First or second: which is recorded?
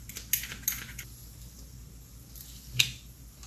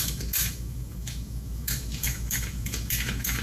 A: first